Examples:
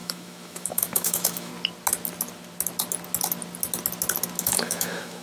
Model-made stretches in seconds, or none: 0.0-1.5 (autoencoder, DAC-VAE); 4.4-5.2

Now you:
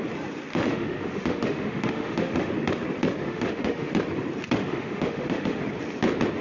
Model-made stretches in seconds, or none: 0.5-2.5 (autoencoder, DAC-VAE); 3.2-3.9; 4.6-5.6